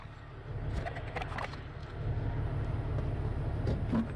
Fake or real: real